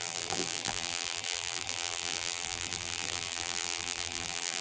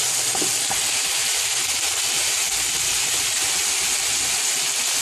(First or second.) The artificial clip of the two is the first